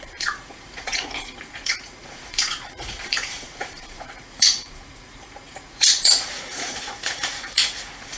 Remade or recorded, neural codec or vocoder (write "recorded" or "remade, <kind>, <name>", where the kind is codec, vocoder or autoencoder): remade, vocoder, Vocos